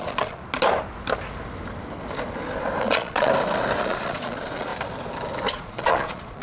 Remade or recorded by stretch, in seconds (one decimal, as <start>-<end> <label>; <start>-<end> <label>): 0.0-0.4 remade; 0.4-2.8 recorded; 2.8-3.3 remade; 3.3-3.8 recorded; 3.8-4.7 remade; 4.7-5.5 recorded; 5.5-6.4 remade